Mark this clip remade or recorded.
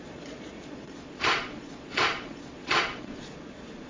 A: remade